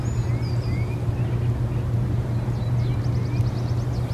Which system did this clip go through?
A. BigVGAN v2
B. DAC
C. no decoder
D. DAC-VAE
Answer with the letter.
C